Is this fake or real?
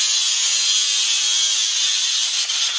real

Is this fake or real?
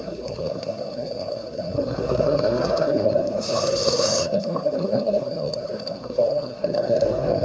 fake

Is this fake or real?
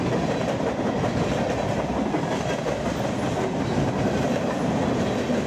real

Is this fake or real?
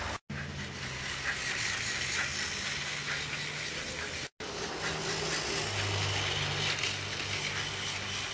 real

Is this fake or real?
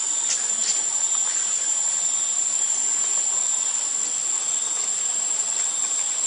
real